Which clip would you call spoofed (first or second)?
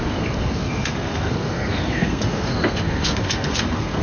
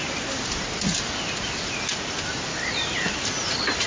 first